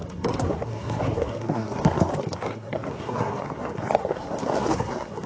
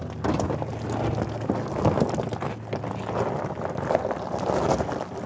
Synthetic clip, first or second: first